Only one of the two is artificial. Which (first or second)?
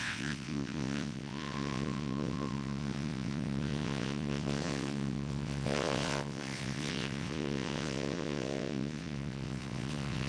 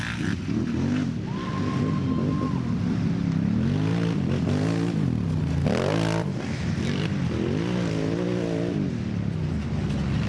first